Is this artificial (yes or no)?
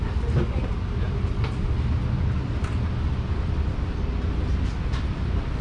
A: no